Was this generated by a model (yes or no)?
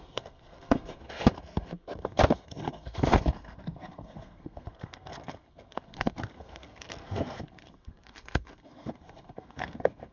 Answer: yes